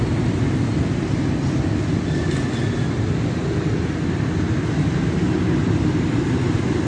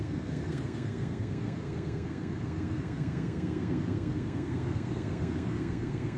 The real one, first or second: first